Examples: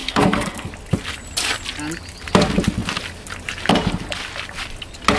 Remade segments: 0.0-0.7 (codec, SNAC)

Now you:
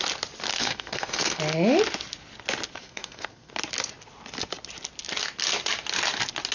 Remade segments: 0.5-1.4 (codec, SNAC); 2.8-3.5

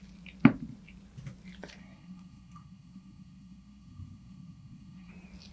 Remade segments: 1.8-5.1 (codec, SNAC)